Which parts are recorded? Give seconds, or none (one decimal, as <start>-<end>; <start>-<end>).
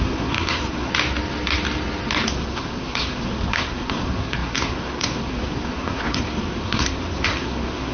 0.9-2.3